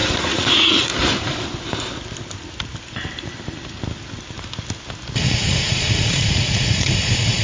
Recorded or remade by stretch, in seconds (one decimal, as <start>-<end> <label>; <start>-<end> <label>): 0.0-0.9 remade; 0.9-5.3 recorded; 5.3-7.4 remade